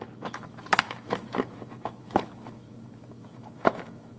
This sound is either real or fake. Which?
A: fake